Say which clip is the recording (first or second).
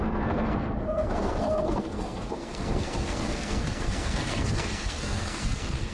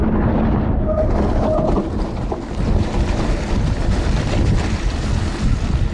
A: second